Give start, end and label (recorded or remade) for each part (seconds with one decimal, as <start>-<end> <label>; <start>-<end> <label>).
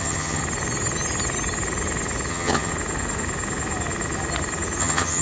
0.0-0.4 remade; 0.4-2.3 recorded; 2.3-2.7 remade; 2.7-4.8 recorded; 4.8-5.2 remade